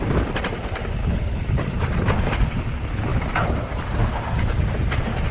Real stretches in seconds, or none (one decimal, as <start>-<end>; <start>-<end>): 0.0-1.0; 1.7-5.3